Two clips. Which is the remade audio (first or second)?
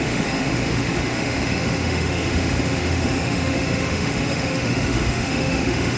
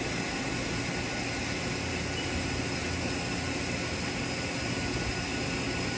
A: first